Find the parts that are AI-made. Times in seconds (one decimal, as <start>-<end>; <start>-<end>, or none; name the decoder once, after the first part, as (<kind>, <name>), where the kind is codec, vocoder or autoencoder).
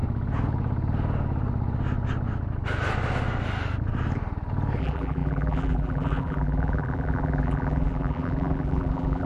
4.8-9.3 (vocoder, BigVGAN v2)